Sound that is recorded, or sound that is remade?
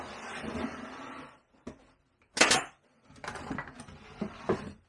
recorded